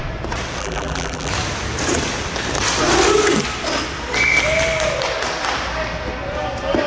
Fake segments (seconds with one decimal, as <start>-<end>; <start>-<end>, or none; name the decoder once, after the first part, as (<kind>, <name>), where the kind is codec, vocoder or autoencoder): 0.6-1.3 (vocoder, BigVGAN v2)